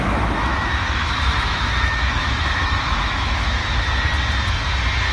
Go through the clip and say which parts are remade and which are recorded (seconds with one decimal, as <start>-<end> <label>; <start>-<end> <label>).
0.0-3.6 remade; 3.6-5.1 recorded